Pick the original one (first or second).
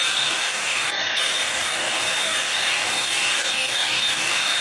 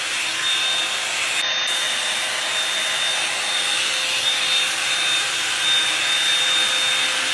second